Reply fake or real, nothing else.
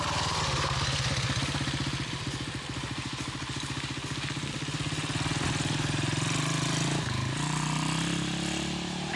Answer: real